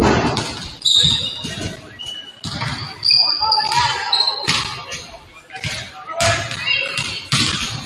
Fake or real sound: fake